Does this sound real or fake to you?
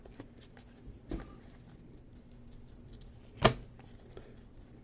real